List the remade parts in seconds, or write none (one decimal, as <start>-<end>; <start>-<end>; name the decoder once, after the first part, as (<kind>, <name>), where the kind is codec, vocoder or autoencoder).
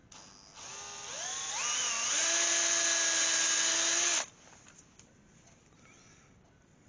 none